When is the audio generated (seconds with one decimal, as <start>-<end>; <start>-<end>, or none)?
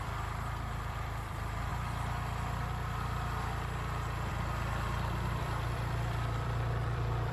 0.0-1.7; 4.3-7.3